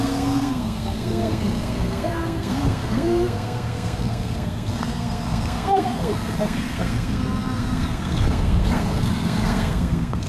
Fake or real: fake